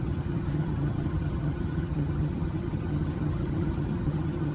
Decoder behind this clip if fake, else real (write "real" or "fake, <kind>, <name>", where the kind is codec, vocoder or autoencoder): fake, vocoder, HiFi-GAN